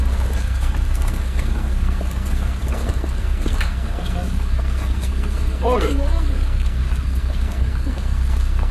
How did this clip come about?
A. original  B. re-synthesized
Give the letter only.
B